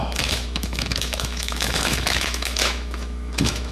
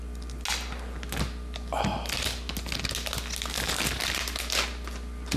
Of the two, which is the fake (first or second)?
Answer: first